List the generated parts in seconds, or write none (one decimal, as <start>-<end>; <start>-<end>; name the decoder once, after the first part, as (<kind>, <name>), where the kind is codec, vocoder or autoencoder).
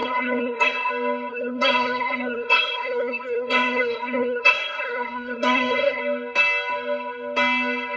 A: 0.0-0.9 (codec, SNAC); 1.3-6.0